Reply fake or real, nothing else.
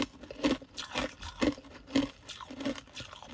real